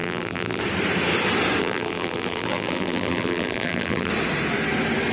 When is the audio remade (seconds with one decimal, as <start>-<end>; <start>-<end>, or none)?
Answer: 0.0-0.6; 1.6-4.1